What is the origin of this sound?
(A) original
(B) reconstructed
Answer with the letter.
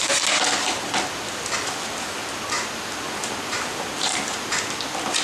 A